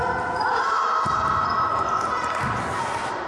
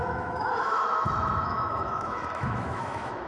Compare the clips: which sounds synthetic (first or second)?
second